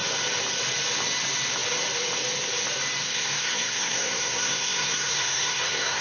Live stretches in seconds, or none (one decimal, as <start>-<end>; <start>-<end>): 0.0-3.0

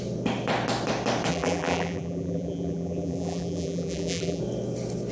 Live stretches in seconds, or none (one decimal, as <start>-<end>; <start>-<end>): 0.0-1.3; 4.4-5.1

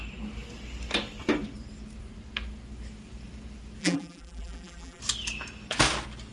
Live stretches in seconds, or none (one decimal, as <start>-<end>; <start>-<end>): 0.0-3.8; 5.0-6.3

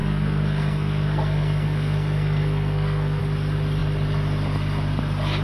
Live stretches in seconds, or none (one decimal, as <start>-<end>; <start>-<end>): 3.2-5.4

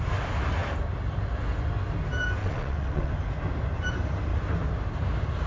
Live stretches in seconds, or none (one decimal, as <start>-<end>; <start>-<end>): 0.0-2.4; 3.1-5.5

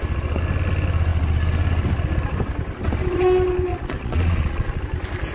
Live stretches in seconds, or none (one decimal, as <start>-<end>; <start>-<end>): 0.0-3.7; 4.8-5.3